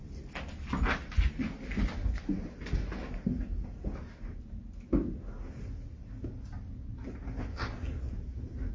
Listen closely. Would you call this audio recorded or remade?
recorded